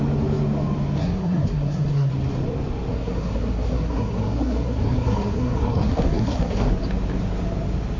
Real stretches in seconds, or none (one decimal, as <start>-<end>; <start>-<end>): 0.0-1.0; 2.1-2.9; 6.7-8.0